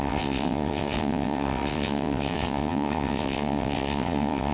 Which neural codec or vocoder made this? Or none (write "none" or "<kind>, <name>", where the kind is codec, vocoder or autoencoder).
vocoder, WaveNeXt